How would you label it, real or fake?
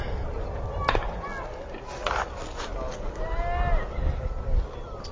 real